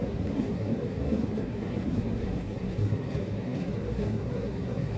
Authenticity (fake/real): fake